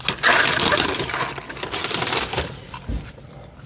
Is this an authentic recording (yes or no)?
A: yes